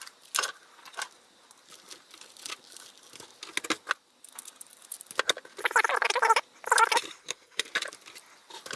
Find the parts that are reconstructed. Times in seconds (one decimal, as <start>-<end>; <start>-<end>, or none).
7.2-7.7